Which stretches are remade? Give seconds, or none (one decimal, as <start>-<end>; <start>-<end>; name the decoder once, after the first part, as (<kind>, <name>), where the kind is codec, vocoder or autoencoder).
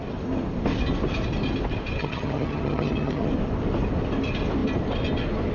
2.0-3.3 (vocoder, HiFi-GAN)